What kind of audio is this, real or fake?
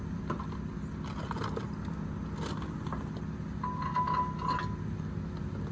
real